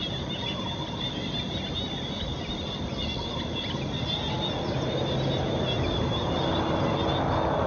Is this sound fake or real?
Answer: real